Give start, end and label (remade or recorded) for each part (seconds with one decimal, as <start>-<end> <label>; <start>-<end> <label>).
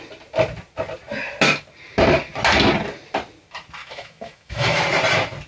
0.0-3.8 recorded; 3.8-4.8 remade; 4.8-5.5 recorded